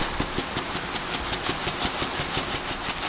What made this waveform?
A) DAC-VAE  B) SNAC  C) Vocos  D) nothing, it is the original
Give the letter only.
D